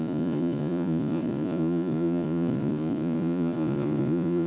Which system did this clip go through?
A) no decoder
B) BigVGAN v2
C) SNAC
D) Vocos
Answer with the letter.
D